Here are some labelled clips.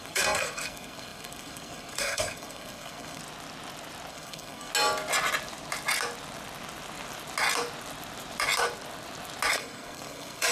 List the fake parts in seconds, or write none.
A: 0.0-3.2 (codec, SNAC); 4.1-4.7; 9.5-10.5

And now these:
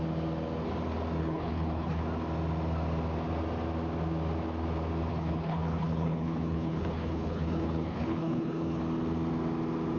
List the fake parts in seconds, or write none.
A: 1.2-2.0 (codec, HILCodec); 5.1-8.8

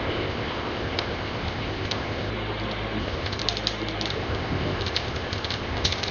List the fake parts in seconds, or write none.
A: 0.0-2.3 (codec, ZipCodec); 3.0-3.4; 4.1-6.1

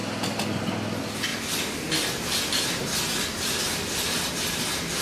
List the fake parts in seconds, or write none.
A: 0.0-0.6 (vocoder, BigVGAN v2)

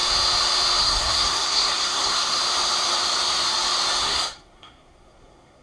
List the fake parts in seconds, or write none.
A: 0.8-2.4 (codec, SNAC); 4.0-5.6

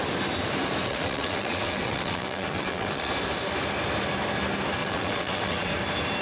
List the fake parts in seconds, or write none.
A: 0.8-3.1 (vocoder, WaveNeXt); 4.8-5.7

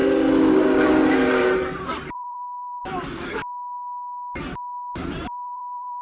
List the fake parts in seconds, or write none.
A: 0.5-2.8 (vocoder, BigVGAN v2); 5.1-6.0

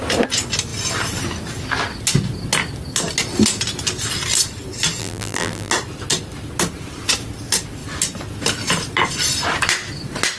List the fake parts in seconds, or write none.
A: 5.0-5.7 (vocoder, BigVGAN v2)